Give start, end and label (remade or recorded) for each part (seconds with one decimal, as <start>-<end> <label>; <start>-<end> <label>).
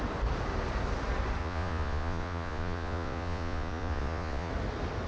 0.0-1.4 recorded; 1.4-4.5 remade; 4.5-5.1 recorded